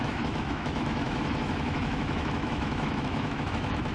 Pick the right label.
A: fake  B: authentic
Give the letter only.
A